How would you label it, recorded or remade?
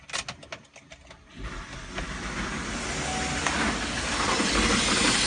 recorded